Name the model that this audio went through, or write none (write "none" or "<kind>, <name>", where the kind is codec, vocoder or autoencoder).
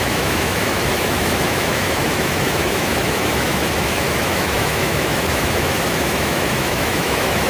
autoencoder, DAC-VAE